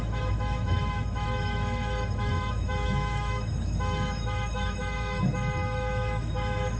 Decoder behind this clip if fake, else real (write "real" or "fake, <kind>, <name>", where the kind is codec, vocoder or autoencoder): fake, autoencoder, DAC-VAE